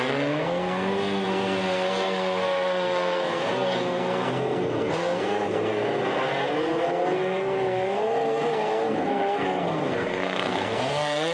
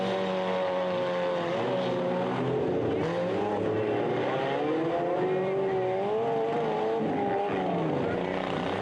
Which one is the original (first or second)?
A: second